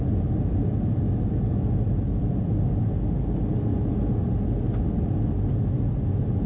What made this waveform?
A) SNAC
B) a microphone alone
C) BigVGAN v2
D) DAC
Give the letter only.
B